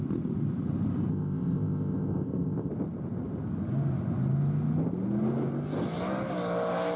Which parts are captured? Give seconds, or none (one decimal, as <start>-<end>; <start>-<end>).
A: 0.0-1.1; 2.7-7.0